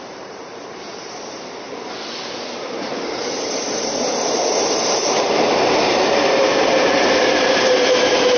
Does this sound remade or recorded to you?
remade